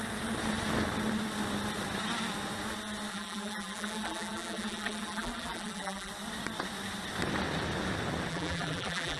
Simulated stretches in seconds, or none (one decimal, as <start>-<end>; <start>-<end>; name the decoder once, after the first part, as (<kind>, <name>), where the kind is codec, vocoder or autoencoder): 3.1-6.1 (vocoder, BigVGAN v2); 8.3-9.2